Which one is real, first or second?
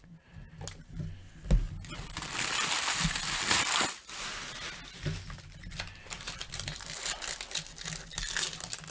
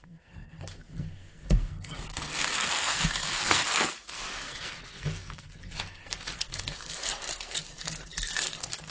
first